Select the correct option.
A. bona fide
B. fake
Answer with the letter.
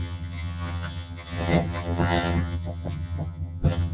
B